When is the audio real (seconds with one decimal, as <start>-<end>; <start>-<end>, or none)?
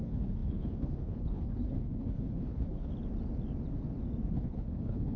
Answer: 2.9-4.3